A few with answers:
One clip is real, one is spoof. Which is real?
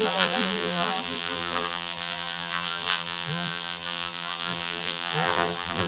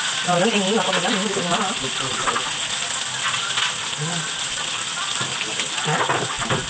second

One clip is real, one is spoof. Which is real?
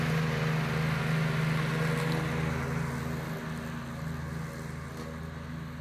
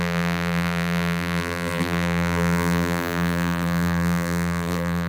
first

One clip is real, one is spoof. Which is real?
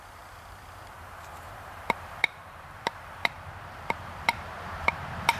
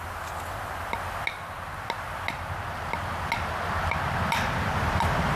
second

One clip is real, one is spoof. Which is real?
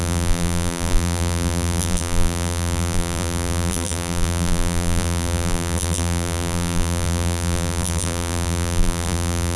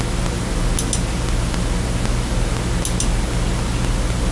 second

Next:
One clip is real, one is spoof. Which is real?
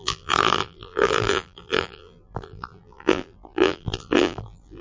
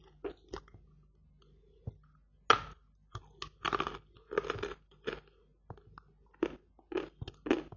second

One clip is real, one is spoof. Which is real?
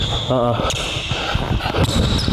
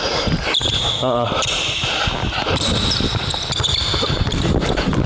first